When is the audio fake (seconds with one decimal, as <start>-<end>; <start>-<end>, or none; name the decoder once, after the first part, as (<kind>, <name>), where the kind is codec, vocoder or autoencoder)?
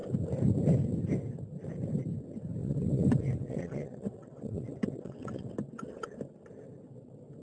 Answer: 2.6-5.5 (vocoder, WaveNeXt)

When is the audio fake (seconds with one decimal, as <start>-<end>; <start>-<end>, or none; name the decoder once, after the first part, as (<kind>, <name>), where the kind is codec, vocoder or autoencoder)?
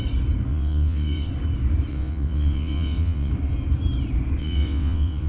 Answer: 0.5-1.3 (vocoder, WaveNeXt); 1.9-3.3; 4.4-5.3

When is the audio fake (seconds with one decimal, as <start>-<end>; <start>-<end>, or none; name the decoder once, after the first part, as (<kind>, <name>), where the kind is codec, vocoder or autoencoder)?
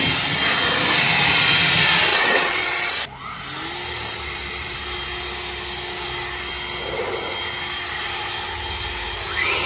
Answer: 2.1-3.0 (vocoder, WaveNeXt)